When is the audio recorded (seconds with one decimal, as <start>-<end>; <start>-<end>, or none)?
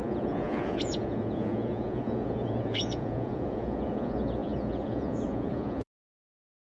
none